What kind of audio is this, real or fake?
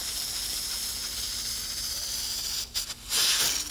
real